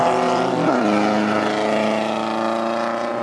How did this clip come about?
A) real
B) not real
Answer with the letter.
B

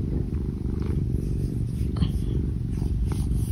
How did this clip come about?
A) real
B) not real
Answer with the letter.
A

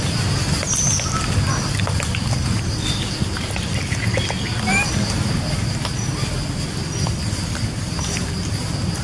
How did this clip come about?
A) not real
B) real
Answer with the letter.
B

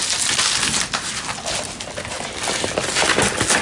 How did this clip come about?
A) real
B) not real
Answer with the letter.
A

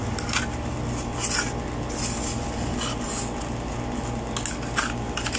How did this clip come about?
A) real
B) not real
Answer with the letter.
A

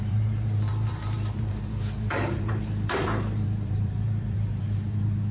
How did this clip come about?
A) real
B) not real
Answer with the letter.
B